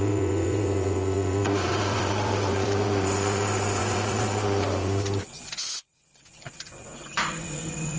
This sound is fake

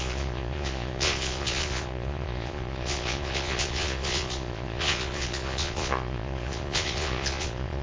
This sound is fake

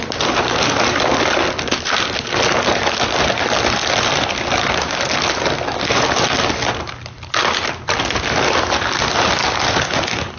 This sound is real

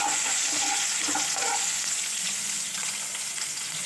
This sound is fake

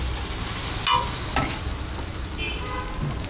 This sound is real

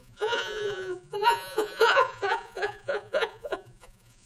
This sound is fake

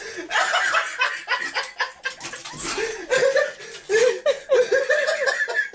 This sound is real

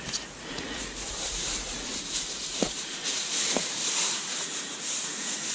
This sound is fake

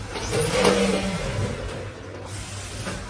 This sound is real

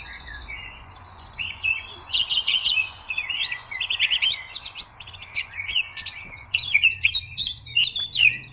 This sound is fake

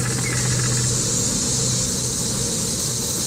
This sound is real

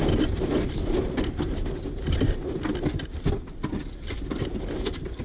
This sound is real